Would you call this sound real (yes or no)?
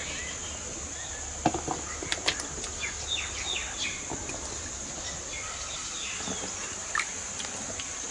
yes